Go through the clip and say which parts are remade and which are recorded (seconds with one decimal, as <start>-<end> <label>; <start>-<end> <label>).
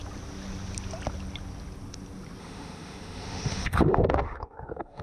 0.0-2.4 recorded; 2.4-5.0 remade